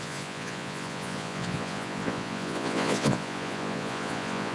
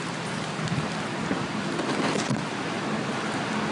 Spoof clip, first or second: first